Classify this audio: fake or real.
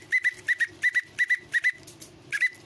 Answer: real